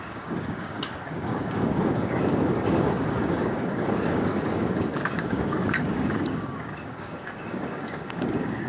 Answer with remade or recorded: remade